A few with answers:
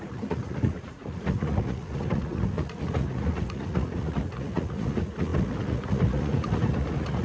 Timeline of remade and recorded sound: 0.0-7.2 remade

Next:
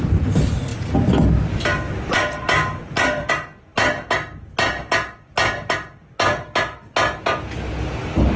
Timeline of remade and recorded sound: 0.0-8.4 recorded